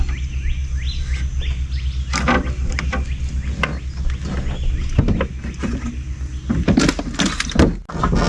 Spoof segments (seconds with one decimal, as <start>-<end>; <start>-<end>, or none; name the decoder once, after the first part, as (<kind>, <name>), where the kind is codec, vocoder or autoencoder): none